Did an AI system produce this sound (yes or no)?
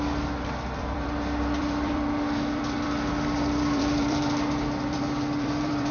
yes